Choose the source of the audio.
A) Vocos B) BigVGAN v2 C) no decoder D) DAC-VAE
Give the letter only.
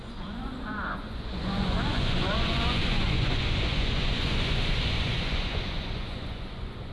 A